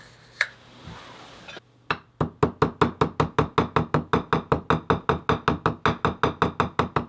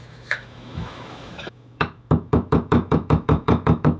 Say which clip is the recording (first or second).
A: first